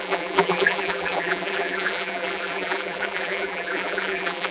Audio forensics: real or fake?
fake